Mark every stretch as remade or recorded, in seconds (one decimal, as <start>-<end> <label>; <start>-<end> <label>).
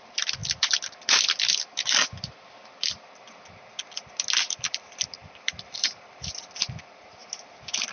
0.0-0.4 remade; 0.4-4.3 recorded; 4.3-7.2 remade; 7.2-7.9 recorded